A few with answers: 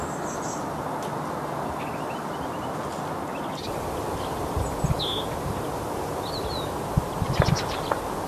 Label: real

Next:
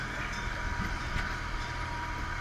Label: real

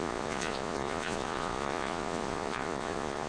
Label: fake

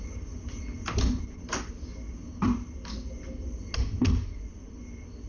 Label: real